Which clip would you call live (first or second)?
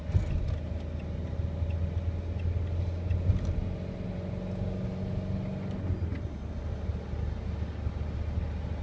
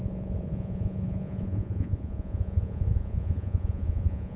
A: first